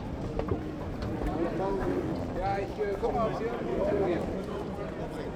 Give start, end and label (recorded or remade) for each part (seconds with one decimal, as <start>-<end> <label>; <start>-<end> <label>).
0.0-2.5 recorded; 2.5-3.1 remade; 3.1-3.7 recorded; 3.7-4.3 remade; 4.3-5.4 recorded